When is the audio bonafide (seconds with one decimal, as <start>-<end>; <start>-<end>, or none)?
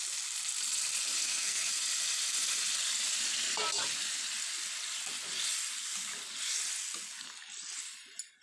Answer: 0.0-1.2; 1.7-8.4